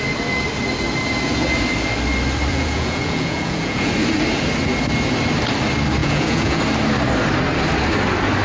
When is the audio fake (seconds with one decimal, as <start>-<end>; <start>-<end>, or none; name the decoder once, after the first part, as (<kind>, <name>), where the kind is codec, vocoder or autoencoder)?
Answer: 2.5-3.9 (vocoder, Vocos); 6.0-6.6